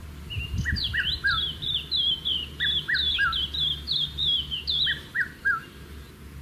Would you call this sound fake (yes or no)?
no